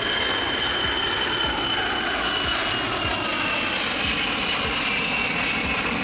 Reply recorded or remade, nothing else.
recorded